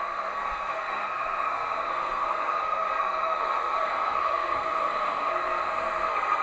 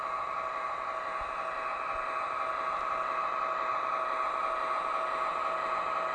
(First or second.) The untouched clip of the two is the second